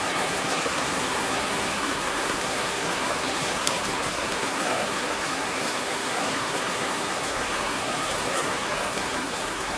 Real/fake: fake